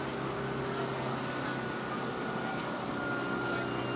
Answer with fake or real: real